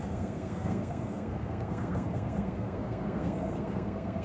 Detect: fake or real fake